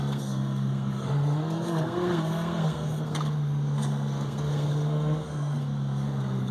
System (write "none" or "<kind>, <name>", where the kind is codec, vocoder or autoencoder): codec, SNAC